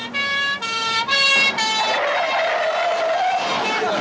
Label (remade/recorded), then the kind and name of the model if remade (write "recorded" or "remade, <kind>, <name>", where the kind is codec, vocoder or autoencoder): recorded